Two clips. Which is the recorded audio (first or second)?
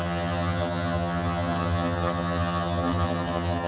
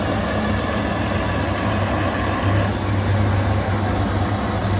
second